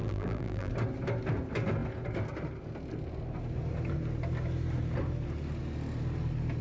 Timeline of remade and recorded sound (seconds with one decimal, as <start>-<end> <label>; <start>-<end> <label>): 0.0-0.7 remade; 0.7-6.6 recorded